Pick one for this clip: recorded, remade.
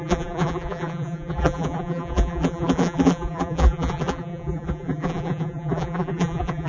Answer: remade